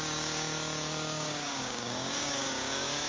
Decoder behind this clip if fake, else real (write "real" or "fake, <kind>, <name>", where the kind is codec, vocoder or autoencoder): fake, codec, DAC